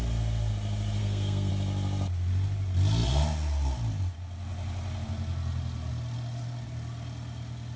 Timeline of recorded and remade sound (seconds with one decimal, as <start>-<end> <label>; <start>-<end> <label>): 0.0-1.0 recorded; 1.0-1.5 remade; 1.5-7.8 recorded